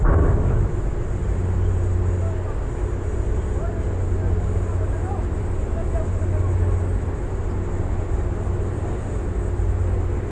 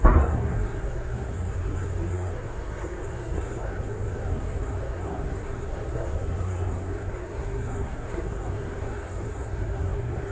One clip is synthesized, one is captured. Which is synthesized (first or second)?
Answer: second